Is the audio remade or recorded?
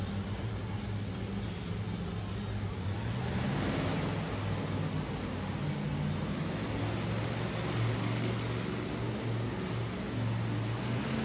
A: recorded